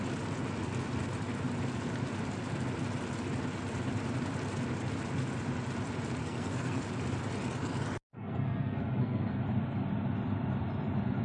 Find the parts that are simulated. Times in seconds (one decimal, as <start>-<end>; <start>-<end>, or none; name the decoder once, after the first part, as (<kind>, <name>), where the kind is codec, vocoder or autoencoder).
6.2-6.8 (codec, SNAC); 8.1-9.4